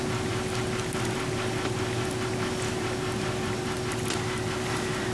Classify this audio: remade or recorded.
recorded